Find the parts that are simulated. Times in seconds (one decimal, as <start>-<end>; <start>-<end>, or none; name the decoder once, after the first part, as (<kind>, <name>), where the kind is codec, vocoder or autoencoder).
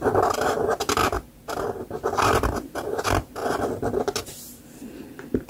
0.0-3.4 (vocoder, BigVGAN v2); 4.2-5.5